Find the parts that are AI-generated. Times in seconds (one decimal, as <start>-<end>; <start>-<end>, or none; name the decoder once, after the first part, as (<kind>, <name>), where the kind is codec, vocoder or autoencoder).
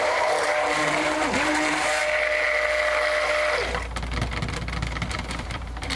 0.0-2.0 (vocoder, BigVGAN v2); 5.1-6.0